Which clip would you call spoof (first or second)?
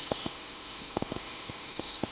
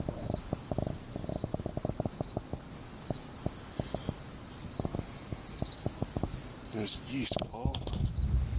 first